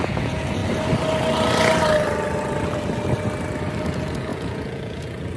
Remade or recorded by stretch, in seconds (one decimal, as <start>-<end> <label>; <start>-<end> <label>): 0.0-0.6 remade; 0.6-3.8 recorded; 3.8-5.4 remade